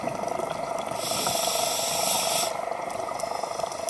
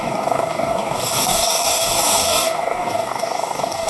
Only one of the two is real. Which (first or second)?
first